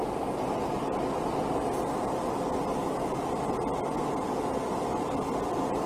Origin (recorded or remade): recorded